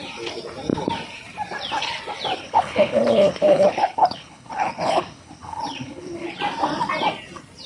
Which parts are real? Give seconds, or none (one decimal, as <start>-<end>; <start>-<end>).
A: 0.0-2.4; 6.4-7.7